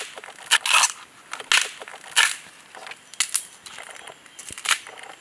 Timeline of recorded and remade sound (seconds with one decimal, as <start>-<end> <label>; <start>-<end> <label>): 0.0-5.2 recorded